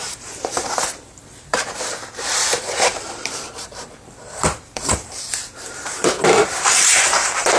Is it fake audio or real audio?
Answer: fake